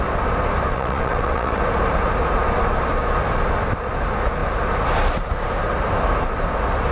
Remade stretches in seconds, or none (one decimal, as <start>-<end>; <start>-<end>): 0.7-1.6